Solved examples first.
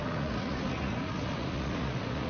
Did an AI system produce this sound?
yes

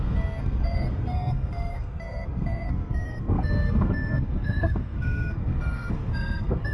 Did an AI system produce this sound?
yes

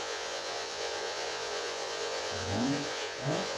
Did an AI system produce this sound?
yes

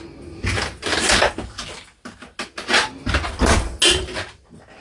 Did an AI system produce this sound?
no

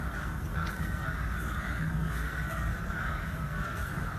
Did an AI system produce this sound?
yes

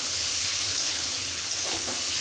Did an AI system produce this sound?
yes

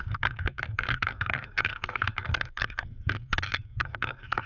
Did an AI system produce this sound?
yes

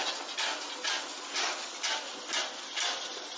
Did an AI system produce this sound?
no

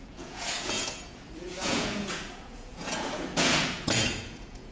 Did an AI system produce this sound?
yes